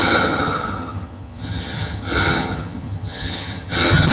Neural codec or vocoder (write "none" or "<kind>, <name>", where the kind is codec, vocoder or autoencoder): vocoder, HiFi-GAN